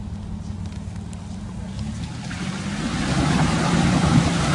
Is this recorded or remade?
recorded